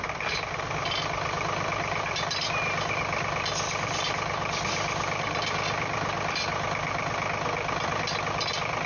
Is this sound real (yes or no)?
yes